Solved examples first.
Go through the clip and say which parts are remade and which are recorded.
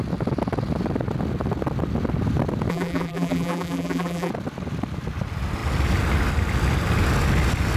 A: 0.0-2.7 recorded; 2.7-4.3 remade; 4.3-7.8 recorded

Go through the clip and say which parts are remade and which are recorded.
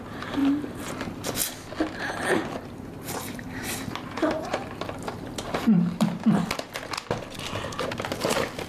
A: 0.0-1.4 remade; 1.4-2.3 recorded; 2.3-4.6 remade; 4.6-7.8 recorded; 7.8-8.7 remade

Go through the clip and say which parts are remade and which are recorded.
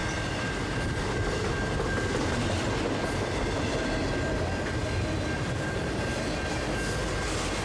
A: 0.0-4.0 remade; 4.0-4.8 recorded; 4.8-6.5 remade; 6.5-7.6 recorded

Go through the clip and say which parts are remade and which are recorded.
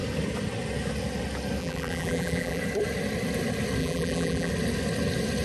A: 0.0-1.6 recorded; 1.6-2.6 remade; 2.6-3.8 recorded; 3.8-4.5 remade; 4.5-5.4 recorded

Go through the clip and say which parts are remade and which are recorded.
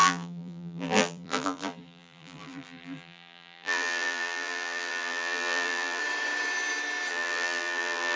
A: 0.0-6.0 remade; 6.0-7.1 recorded; 7.1-8.2 remade